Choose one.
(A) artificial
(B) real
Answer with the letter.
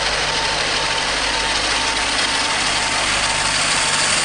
B